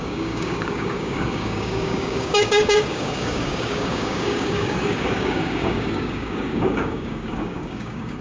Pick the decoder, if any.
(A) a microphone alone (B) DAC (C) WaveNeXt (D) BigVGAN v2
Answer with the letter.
B